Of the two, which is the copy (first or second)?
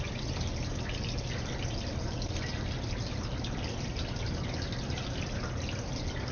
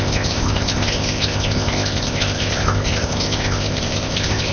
second